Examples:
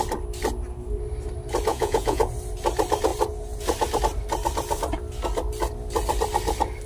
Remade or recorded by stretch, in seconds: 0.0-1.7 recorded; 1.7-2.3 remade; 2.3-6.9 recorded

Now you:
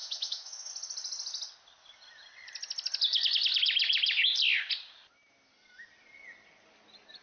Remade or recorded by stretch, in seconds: 0.0-0.7 remade; 0.7-7.2 recorded

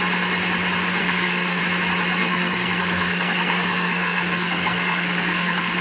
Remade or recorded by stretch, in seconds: 0.0-1.0 recorded; 1.0-1.6 remade; 1.6-2.2 recorded; 2.2-5.8 remade

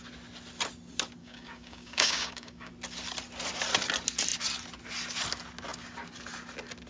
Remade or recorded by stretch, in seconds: 0.0-1.2 recorded; 1.2-2.7 remade; 2.7-6.9 recorded